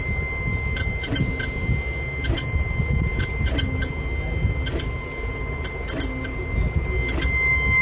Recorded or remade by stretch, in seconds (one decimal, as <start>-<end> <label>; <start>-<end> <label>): 0.0-7.8 recorded